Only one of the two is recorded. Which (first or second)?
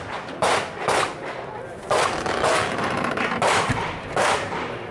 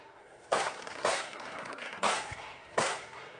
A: first